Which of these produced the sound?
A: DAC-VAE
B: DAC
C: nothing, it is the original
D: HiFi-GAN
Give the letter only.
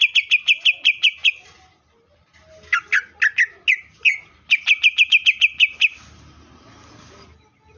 C